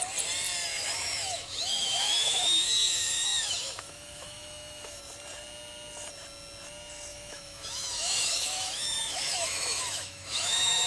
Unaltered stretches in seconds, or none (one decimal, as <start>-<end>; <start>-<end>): 0.0-0.7; 5.0-7.1